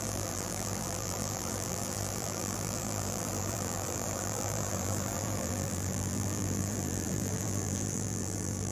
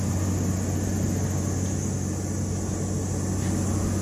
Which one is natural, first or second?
second